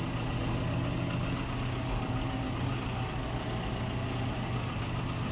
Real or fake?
real